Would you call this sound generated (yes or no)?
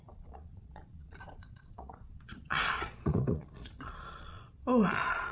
yes